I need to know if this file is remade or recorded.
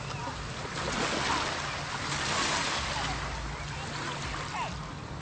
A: recorded